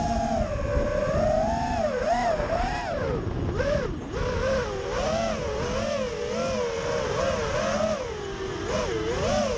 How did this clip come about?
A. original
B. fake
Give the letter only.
A